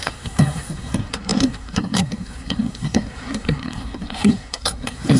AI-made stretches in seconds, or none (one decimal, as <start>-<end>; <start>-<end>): 0.0-5.2